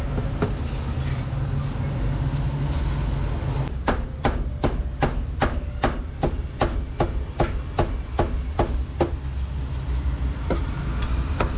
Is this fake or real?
real